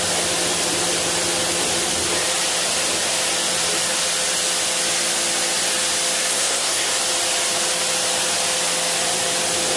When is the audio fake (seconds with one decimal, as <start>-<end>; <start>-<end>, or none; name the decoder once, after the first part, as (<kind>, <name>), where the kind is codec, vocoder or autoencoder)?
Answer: 6.3-6.9 (codec, SNAC)